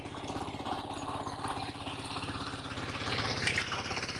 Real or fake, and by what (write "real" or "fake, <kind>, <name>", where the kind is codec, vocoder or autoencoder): fake, vocoder, BigVGAN v2